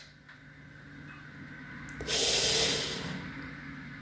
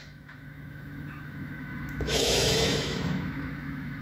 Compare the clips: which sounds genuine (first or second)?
first